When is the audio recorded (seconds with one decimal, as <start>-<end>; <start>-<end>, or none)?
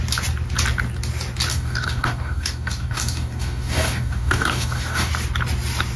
0.0-1.5; 5.1-6.0